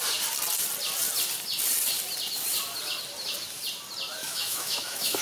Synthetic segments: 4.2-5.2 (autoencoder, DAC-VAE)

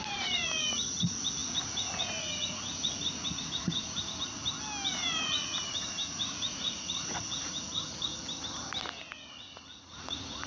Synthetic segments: 0.0-4.4 (vocoder, Vocos); 4.9-8.1; 9.3-10.5

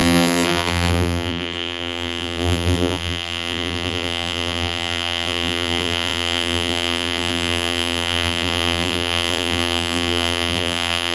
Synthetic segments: 0.0-11.1 (vocoder, BigVGAN v2)

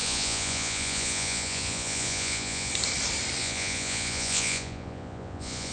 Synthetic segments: 0.0-2.7 (vocoder, Vocos); 3.4-5.7